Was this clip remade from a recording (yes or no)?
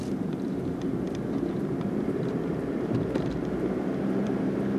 yes